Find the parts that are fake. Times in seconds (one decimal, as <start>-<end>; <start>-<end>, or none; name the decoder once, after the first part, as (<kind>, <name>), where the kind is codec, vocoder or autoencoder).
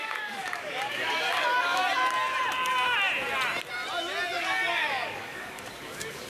0.0-1.8 (codec, DAC); 4.4-6.3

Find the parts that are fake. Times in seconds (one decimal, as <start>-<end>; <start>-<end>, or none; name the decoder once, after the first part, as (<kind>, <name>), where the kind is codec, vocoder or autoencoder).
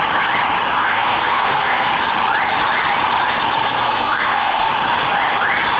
0.8-1.9 (codec, SNAC); 3.6-4.7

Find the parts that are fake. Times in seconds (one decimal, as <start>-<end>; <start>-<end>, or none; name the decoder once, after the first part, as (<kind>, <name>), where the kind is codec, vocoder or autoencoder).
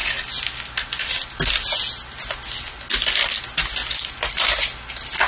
none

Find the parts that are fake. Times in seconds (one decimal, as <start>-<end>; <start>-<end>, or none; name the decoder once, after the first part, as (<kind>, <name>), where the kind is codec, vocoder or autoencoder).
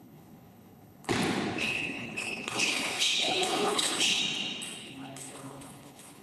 0.0-1.1 (codec, HILCodec); 1.6-4.2; 4.8-6.2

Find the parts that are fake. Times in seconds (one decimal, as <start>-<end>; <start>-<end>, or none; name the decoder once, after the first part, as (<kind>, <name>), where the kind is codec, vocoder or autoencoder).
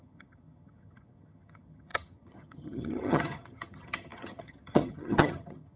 0.0-5.8 (vocoder, HiFi-GAN)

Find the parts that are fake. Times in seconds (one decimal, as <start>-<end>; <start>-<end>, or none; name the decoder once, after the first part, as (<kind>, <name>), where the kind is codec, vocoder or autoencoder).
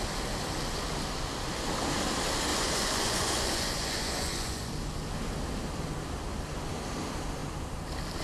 2.5-4.7 (vocoder, Vocos)